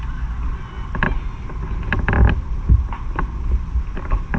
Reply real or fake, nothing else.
real